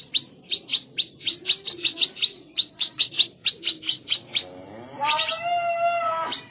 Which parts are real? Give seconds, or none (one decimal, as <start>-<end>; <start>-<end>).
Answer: 0.0-2.3; 3.1-6.5